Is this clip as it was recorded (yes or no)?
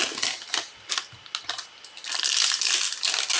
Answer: yes